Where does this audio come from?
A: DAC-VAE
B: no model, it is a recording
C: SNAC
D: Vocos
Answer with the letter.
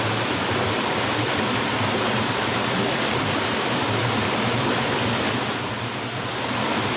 B